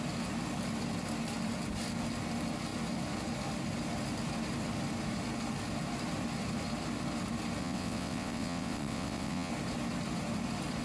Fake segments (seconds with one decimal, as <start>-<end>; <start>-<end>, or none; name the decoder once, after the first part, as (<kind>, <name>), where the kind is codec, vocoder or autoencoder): 7.6-9.5 (vocoder, WaveNeXt)